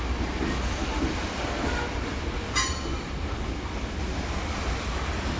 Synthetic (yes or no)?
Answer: no